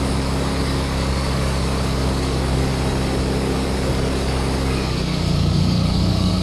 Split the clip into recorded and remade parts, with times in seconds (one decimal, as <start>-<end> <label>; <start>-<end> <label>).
0.0-2.7 remade; 2.7-3.2 recorded; 3.2-6.4 remade